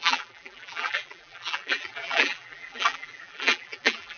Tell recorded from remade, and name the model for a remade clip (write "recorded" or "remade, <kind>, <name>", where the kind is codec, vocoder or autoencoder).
remade, vocoder, BigVGAN v2